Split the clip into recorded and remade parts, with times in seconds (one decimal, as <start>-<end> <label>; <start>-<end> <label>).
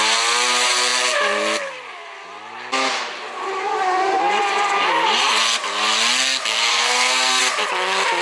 0.0-6.7 recorded; 6.7-7.4 remade; 7.4-8.2 recorded